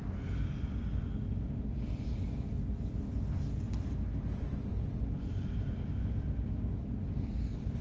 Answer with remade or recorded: recorded